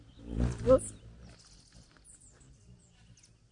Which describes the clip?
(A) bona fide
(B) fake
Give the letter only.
A